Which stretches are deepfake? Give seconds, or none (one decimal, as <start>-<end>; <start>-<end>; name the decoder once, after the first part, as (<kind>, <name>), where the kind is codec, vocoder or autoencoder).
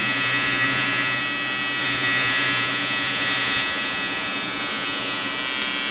0.0-1.2 (vocoder, Vocos); 1.8-5.3